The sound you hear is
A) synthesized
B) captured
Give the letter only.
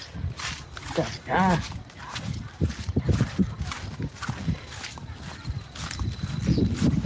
B